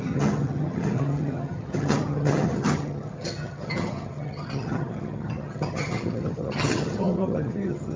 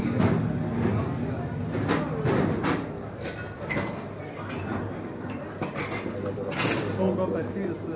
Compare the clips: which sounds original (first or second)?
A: second